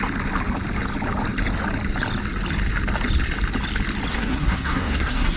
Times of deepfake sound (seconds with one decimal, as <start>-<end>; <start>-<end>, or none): 4.1-5.4